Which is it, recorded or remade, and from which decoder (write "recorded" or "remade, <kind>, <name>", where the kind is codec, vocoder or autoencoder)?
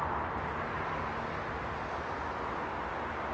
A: recorded